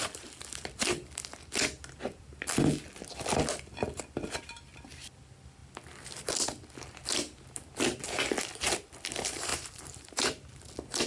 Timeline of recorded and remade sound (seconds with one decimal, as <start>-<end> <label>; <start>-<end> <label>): 0.0-9.5 recorded; 9.5-10.7 remade; 10.7-11.1 recorded